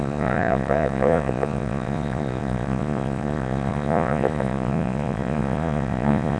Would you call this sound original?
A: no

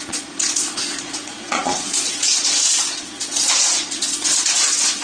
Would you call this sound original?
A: no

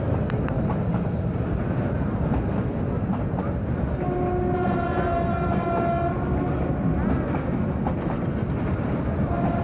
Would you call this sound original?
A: yes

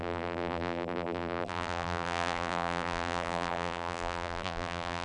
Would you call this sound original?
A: no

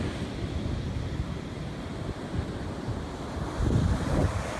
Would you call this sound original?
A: yes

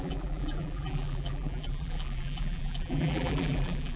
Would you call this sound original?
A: no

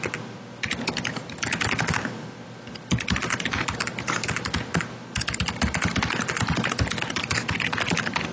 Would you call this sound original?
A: yes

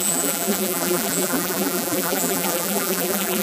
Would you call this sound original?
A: no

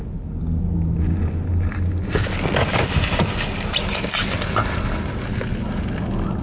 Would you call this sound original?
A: yes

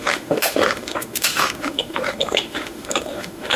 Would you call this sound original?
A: no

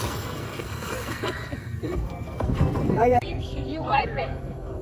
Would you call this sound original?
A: no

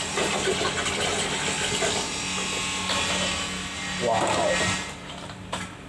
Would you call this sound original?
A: yes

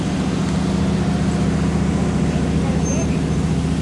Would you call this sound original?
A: yes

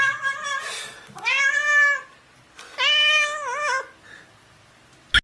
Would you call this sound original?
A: yes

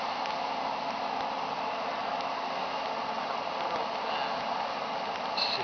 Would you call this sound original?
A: yes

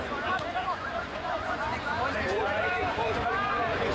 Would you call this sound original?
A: no